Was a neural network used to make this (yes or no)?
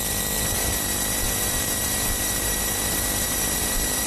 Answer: yes